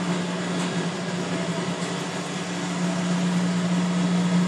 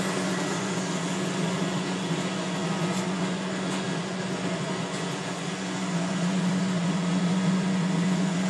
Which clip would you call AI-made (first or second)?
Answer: second